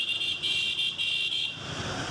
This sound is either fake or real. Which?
real